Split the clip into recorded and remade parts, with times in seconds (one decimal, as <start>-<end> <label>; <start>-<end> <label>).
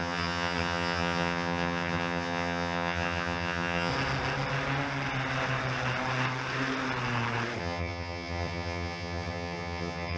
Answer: 0.0-3.9 remade; 3.9-7.6 recorded; 7.6-10.2 remade